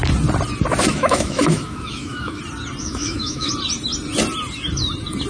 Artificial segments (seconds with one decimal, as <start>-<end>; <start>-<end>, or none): 0.9-2.4; 2.8-3.5